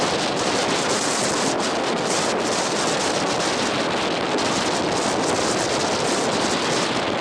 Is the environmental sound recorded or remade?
recorded